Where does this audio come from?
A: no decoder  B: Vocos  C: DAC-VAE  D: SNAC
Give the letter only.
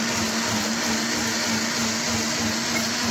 A